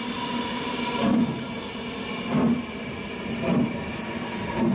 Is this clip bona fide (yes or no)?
yes